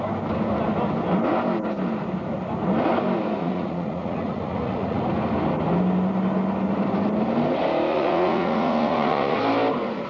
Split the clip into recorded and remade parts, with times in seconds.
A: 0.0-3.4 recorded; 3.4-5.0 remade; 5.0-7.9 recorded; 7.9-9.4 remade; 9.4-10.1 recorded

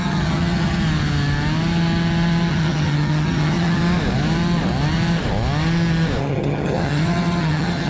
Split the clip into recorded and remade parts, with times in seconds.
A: 0.0-0.8 remade; 0.8-2.5 recorded; 2.5-3.8 remade; 3.8-6.2 recorded; 6.2-7.9 remade

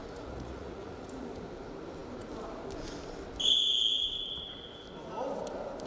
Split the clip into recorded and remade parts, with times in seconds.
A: 0.0-1.3 remade; 1.3-5.9 recorded

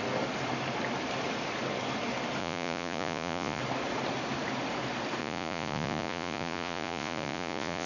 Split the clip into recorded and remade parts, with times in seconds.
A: 0.0-2.4 recorded; 2.4-3.6 remade; 3.6-5.2 recorded; 5.2-7.9 remade

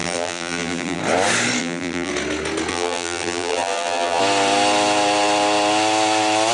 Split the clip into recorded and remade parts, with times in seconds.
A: 0.0-1.0 remade; 1.0-1.6 recorded; 1.6-2.1 remade; 2.1-2.7 recorded; 2.7-4.2 remade; 4.2-6.5 recorded

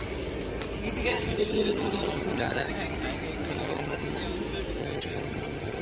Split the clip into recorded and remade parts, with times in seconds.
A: 0.0-1.1 recorded; 1.1-2.7 remade; 2.7-3.5 recorded; 3.5-4.2 remade; 4.2-4.8 recorded; 4.8-5.8 remade

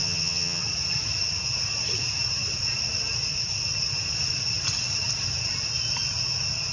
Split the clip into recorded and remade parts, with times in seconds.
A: 0.0-0.6 remade; 0.6-6.7 recorded

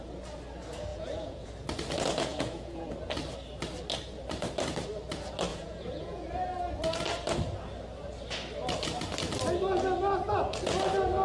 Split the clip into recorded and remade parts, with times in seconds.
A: 0.0-0.9 recorded; 0.9-1.5 remade; 1.5-2.3 recorded; 2.3-2.9 remade; 2.9-5.5 recorded; 5.5-6.2 remade; 6.2-11.2 recorded